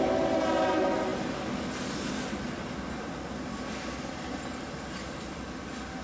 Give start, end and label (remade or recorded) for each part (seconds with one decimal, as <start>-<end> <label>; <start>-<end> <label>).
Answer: 0.0-6.0 recorded